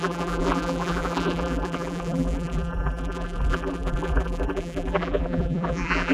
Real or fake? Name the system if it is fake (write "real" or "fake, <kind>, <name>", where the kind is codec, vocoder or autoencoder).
fake, vocoder, BigVGAN v2